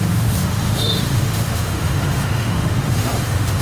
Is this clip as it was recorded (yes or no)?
no